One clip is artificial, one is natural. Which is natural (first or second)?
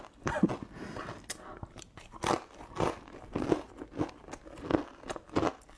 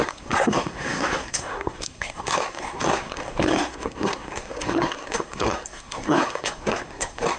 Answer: first